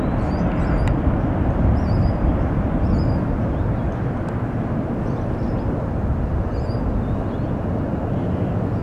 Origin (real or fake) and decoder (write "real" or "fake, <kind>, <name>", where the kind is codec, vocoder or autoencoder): real